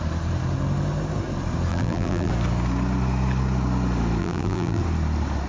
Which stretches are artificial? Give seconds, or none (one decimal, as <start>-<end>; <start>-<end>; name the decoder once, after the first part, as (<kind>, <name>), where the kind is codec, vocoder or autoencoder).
1.7-2.3 (vocoder, BigVGAN v2); 4.2-4.8